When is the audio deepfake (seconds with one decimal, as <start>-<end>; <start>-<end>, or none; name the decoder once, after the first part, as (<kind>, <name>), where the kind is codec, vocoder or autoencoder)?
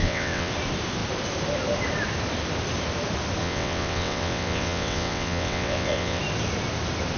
0.0-0.5 (vocoder, WaveNeXt); 3.4-6.2